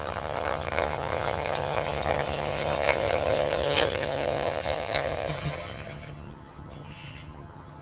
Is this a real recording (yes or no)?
no